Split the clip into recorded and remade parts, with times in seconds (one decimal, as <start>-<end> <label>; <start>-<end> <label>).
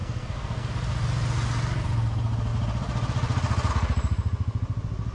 0.0-0.7 remade; 0.7-5.1 recorded